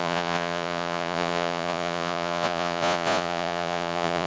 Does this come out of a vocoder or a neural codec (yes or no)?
yes